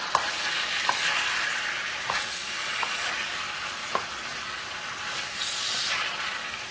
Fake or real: real